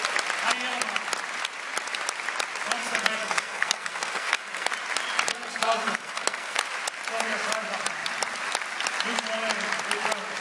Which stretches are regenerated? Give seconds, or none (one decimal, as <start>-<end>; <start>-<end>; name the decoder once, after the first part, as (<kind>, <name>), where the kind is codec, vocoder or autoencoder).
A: 2.8-4.7 (codec, SNAC); 5.3-6.6